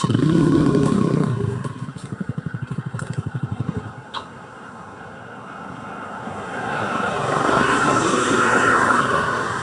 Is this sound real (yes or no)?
no